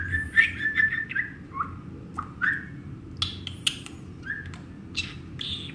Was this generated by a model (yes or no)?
no